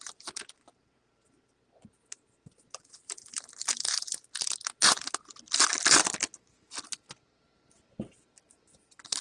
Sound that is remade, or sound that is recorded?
recorded